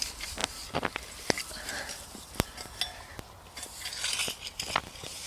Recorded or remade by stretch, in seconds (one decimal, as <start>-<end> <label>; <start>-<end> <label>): 0.0-5.3 recorded